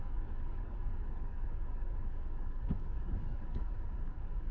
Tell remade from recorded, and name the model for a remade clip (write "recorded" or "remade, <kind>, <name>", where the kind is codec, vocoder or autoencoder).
remade, codec, DAC